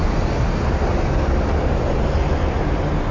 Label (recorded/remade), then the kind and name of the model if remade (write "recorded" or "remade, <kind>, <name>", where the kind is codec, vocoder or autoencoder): recorded